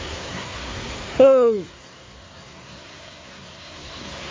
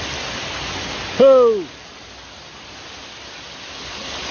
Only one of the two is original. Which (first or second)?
second